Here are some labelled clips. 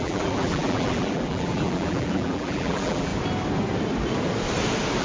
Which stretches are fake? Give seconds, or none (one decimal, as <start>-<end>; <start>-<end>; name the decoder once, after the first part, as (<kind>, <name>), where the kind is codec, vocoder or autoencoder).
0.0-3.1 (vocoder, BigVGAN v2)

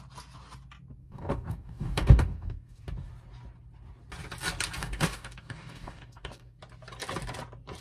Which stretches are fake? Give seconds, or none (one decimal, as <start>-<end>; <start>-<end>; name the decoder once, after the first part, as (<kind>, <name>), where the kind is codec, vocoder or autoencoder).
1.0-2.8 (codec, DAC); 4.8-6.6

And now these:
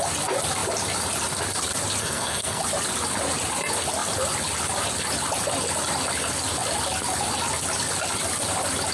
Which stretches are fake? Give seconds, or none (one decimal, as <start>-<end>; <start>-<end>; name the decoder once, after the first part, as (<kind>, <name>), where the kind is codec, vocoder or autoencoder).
2.0-2.6 (codec, SNAC)